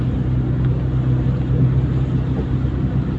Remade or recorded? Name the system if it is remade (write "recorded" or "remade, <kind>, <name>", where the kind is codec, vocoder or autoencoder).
recorded